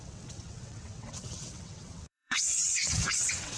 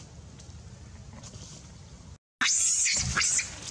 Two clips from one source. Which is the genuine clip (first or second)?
second